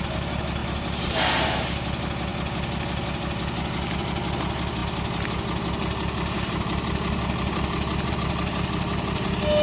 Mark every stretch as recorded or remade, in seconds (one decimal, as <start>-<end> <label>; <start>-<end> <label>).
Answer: 0.0-9.6 recorded